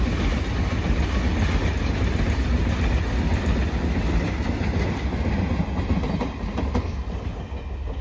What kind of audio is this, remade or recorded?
recorded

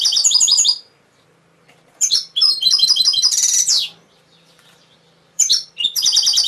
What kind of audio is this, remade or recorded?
remade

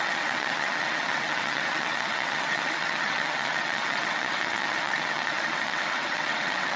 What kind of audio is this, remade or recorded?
remade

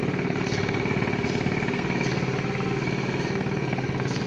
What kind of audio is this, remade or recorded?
remade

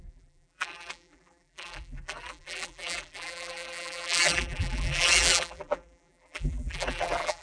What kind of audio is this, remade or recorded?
remade